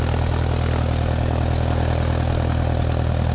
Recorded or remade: recorded